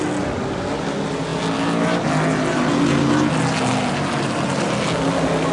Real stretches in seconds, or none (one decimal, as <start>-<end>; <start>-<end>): 0.0-5.5